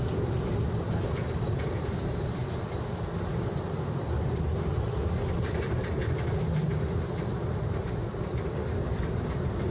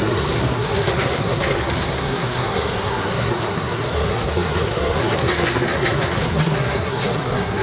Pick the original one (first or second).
first